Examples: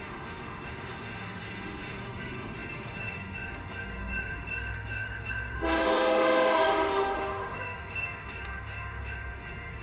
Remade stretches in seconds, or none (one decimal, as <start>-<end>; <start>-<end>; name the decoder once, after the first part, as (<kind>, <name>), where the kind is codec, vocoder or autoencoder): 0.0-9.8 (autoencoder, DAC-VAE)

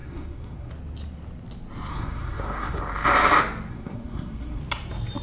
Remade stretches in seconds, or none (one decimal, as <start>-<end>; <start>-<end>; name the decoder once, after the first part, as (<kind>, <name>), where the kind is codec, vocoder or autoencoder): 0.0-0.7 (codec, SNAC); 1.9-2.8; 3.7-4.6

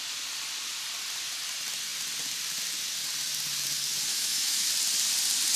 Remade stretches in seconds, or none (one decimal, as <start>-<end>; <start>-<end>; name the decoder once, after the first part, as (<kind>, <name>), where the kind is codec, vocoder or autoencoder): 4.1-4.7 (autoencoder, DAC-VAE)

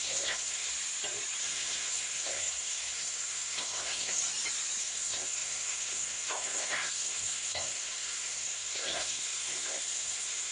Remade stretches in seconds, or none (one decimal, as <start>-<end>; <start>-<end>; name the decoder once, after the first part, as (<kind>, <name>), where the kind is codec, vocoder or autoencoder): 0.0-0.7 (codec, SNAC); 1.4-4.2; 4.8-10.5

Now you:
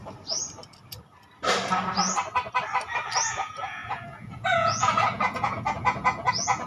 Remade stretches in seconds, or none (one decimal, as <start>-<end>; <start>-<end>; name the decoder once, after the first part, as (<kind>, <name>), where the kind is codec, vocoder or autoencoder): 3.3-6.7 (vocoder, Vocos)

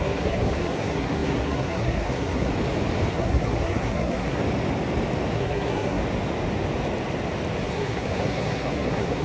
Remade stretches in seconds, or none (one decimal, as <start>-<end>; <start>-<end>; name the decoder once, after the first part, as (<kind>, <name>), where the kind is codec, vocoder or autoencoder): 0.0-2.5 (codec, SNAC); 3.1-4.4; 5.3-6.0; 7.6-9.2